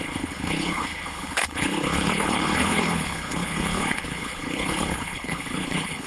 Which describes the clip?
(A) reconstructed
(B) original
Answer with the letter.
A